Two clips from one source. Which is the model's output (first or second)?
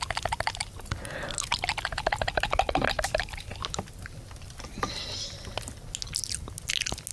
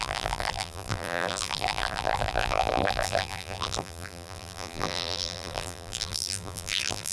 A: second